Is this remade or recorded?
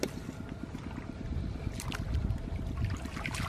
recorded